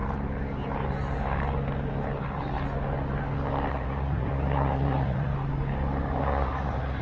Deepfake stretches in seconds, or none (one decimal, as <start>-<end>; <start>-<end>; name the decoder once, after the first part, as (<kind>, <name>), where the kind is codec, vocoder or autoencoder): 3.7-5.3 (vocoder, Vocos); 6.2-7.0